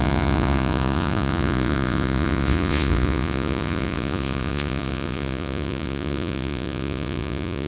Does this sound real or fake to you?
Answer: fake